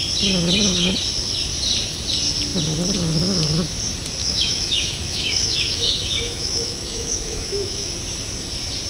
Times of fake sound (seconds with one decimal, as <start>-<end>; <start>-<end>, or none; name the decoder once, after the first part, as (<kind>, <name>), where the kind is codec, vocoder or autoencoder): 4.2-7.9 (autoencoder, DAC-VAE)